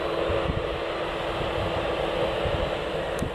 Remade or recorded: recorded